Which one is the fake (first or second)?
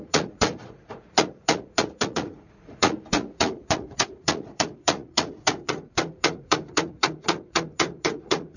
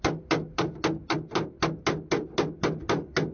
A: first